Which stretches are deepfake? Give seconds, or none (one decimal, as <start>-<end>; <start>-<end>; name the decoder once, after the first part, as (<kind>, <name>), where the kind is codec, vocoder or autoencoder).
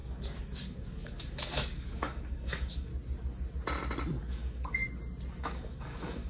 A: 0.0-2.9 (codec, DAC); 4.2-4.8; 5.4-6.3